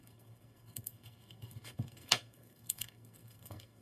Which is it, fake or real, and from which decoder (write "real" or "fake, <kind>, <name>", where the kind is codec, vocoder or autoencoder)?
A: fake, codec, SNAC